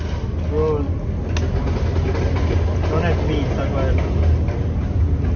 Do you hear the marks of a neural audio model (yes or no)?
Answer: no